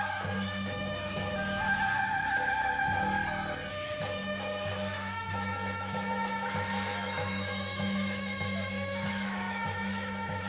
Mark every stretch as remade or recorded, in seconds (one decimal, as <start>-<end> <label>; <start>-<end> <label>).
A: 0.0-3.2 remade; 3.2-3.7 recorded; 3.7-10.5 remade